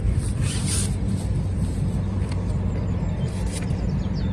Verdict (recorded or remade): recorded